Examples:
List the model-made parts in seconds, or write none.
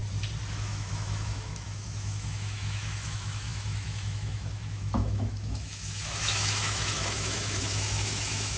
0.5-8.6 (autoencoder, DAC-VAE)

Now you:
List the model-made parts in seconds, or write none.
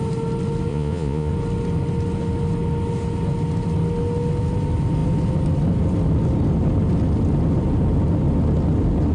0.7-1.3 (vocoder, Vocos)